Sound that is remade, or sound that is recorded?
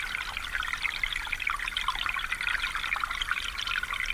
recorded